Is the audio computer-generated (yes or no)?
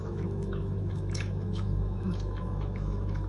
yes